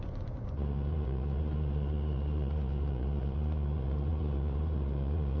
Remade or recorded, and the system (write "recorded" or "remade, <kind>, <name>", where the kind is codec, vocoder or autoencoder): remade, vocoder, Vocos